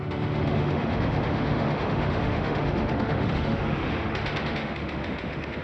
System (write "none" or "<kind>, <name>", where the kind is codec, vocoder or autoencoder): autoencoder, DAC-VAE